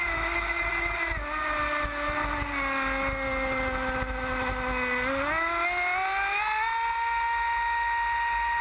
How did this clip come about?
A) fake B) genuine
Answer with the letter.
B